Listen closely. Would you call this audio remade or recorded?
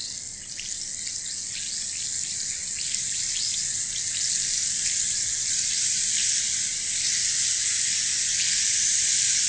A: recorded